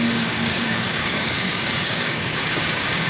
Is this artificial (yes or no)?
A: yes